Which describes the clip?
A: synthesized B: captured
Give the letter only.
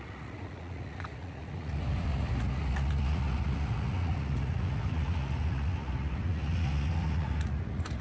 A